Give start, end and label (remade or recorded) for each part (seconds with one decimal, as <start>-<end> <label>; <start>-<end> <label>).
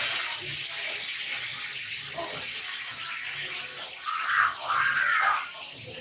0.0-1.5 recorded; 1.5-3.0 remade; 3.0-3.8 recorded; 3.8-6.0 remade